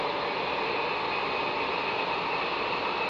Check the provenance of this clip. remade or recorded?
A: recorded